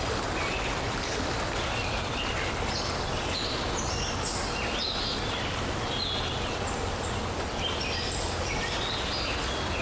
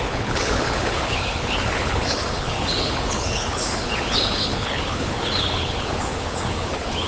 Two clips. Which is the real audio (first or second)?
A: first